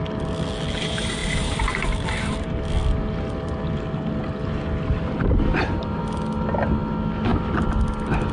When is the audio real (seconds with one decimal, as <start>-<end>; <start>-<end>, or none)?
0.0-1.2; 2.6-5.5; 6.0-8.3